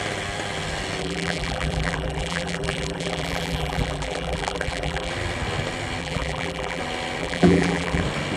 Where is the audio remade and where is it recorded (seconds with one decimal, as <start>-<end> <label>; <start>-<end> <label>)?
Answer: 0.0-1.0 recorded; 1.0-5.1 remade; 5.1-6.0 recorded; 6.0-6.8 remade; 6.8-7.2 recorded; 7.2-8.0 remade; 8.0-8.4 recorded